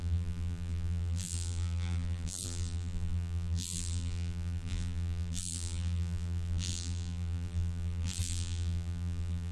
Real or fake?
fake